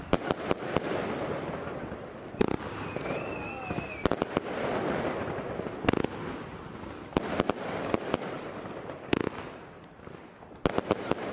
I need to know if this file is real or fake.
real